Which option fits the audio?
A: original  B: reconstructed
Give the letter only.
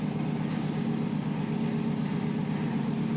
A